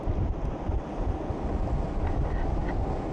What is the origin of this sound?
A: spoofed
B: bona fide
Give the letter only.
B